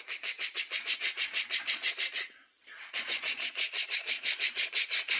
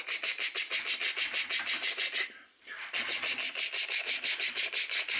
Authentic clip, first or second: second